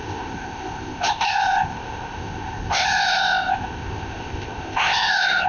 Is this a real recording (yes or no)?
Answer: no